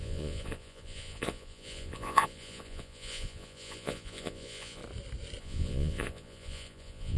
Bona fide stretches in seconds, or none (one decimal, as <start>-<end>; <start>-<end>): 4.8-5.4